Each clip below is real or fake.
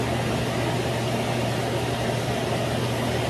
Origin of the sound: real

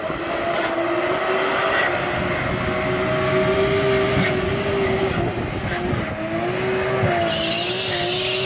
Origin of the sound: real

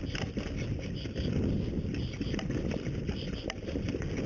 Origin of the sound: real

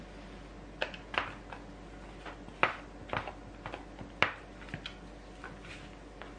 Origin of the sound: real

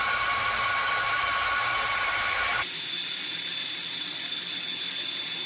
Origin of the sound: fake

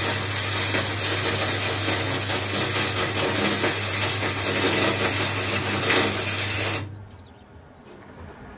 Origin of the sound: real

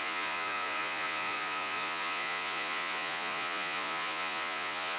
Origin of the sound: fake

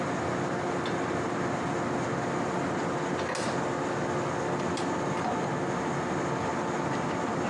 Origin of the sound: real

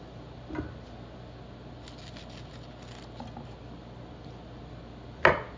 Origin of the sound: real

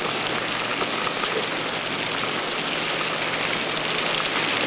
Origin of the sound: real